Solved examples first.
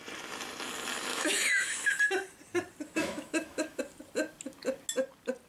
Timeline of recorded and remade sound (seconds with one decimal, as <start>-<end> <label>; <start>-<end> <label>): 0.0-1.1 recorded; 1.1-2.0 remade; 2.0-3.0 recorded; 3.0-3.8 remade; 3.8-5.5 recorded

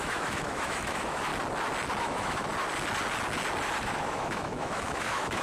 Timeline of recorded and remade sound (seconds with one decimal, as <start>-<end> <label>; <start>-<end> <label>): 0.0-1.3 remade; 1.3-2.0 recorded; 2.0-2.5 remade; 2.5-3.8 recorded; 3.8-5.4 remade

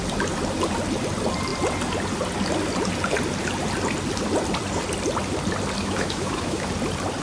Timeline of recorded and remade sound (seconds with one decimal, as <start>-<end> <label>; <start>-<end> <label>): 0.0-5.8 recorded; 5.8-6.7 remade; 6.7-7.2 recorded

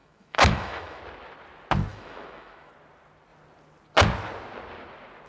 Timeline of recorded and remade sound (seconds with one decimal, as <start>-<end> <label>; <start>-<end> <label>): 0.0-1.0 remade; 1.0-1.9 recorded; 1.9-2.7 remade; 2.7-5.3 recorded